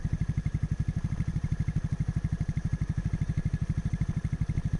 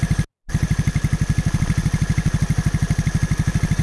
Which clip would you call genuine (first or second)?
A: second